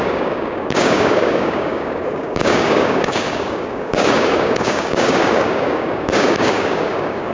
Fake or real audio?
fake